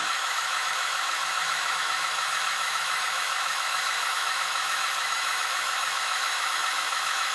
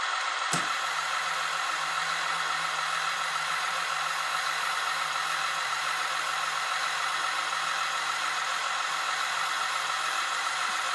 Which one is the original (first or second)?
second